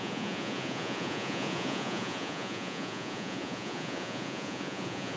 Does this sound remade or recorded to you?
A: remade